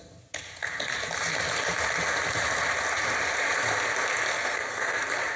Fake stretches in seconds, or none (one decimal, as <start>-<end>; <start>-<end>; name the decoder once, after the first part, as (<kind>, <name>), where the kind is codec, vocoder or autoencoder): 4.4-5.0 (codec, SNAC)